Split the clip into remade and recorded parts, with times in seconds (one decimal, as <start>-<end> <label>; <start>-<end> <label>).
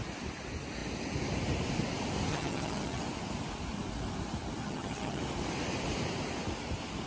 0.0-2.3 recorded; 2.3-3.0 remade; 3.0-4.6 recorded; 4.6-5.2 remade; 5.2-7.1 recorded